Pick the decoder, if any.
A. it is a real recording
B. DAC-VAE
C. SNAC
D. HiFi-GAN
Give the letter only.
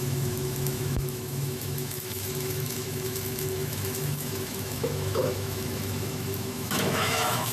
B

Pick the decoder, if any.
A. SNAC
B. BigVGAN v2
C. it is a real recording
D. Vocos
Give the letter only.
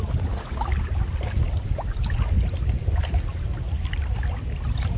C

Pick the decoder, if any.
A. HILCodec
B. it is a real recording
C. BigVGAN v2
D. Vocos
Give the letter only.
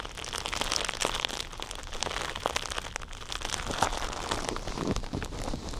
B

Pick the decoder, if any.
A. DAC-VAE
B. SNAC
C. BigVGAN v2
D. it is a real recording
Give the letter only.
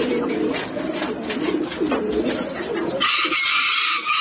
D